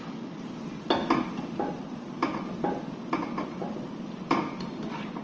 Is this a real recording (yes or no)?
yes